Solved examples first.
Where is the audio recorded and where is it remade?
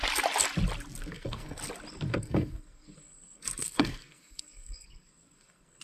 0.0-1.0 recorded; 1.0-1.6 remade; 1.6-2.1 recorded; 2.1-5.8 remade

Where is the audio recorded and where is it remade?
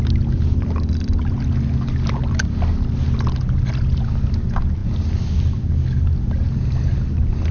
0.0-7.5 recorded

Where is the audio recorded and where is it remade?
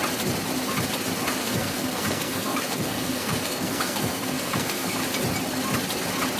0.0-1.4 recorded; 1.4-5.0 remade; 5.0-6.4 recorded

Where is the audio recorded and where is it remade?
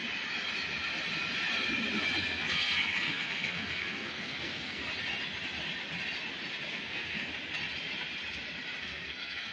0.0-2.2 recorded; 2.2-4.8 remade; 4.8-6.7 recorded; 6.7-7.3 remade; 7.3-8.8 recorded; 8.8-9.5 remade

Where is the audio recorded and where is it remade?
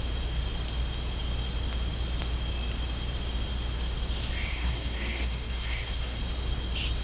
0.0-4.5 recorded; 4.5-6.2 remade; 6.2-7.0 recorded